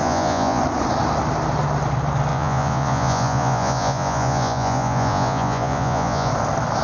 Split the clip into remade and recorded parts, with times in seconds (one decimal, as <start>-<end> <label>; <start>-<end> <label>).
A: 0.0-0.6 remade; 0.6-2.3 recorded; 2.3-6.3 remade; 6.3-6.8 recorded